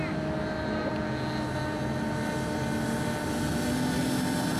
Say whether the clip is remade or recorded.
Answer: recorded